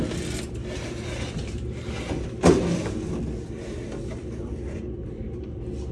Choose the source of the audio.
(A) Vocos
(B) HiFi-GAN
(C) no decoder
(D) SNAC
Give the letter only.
C